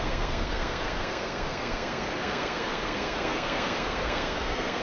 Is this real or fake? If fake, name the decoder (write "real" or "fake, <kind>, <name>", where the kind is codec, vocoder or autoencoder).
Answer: fake, codec, SNAC